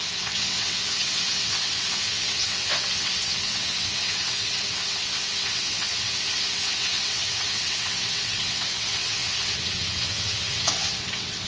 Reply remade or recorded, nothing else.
remade